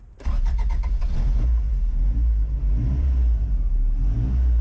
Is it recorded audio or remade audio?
recorded